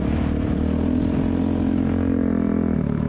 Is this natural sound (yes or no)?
yes